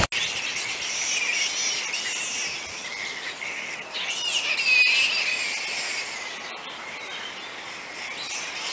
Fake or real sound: real